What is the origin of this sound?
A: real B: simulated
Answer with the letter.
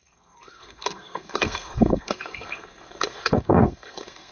B